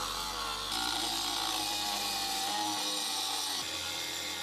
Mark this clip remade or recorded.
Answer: recorded